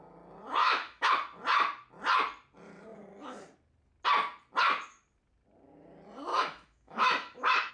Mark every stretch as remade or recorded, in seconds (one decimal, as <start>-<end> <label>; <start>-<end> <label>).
0.0-0.6 recorded; 0.6-1.1 remade; 1.1-6.3 recorded; 6.3-7.7 remade